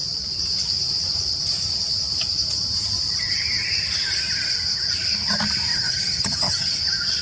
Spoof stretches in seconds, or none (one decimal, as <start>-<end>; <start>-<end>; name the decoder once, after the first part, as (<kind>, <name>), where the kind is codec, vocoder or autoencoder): 5.7-6.8 (vocoder, HiFi-GAN)